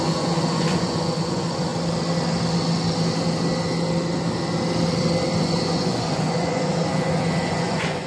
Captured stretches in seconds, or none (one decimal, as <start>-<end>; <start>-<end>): 1.7-5.4